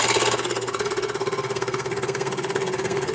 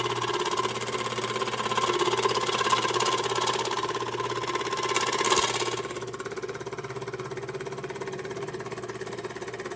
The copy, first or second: first